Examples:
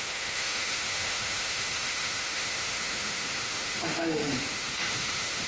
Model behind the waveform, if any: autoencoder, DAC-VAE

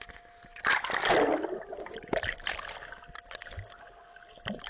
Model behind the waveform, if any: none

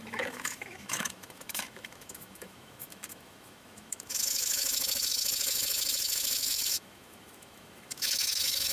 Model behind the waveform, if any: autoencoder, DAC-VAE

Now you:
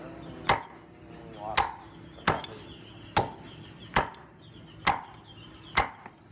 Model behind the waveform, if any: none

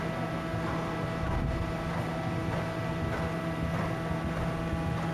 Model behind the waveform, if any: none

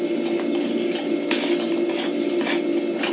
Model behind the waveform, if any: none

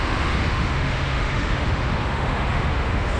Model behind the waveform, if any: autoencoder, DAC-VAE